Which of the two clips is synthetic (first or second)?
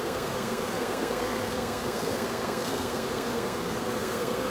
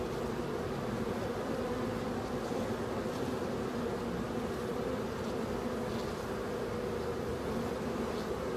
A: first